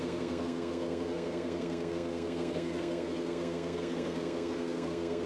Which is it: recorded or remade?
remade